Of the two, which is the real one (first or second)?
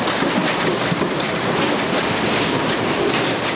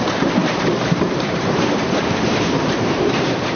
first